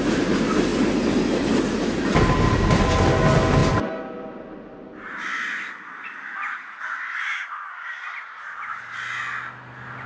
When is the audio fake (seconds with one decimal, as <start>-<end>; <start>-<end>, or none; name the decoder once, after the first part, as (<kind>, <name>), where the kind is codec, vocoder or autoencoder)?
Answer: none